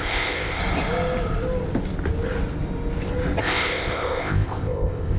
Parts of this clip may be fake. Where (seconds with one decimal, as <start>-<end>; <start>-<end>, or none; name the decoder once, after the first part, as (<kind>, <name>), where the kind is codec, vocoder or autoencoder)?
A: 0.0-0.6 (codec, ZipCodec); 3.4-5.2

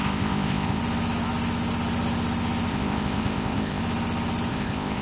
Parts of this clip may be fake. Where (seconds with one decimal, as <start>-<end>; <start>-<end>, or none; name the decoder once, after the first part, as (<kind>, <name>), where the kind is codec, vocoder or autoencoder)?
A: 0.0-0.8 (codec, ZipCodec); 2.7-3.8; 4.5-5.0

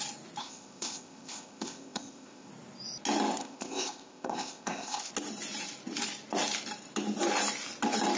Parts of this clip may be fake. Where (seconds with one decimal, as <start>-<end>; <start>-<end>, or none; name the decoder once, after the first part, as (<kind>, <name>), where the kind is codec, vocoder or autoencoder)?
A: 0.4-2.5 (codec, ZipCodec); 3.4-5.1

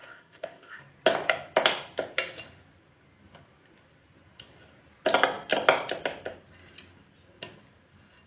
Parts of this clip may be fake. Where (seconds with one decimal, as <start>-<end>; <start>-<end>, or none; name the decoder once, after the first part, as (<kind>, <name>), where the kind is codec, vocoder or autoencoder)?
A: 0.0-0.8 (codec, ZipCodec)

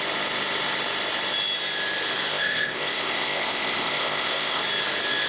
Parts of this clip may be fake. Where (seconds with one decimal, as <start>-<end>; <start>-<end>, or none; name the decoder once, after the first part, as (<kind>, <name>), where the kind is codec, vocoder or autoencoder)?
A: 2.3-4.6 (codec, ZipCodec)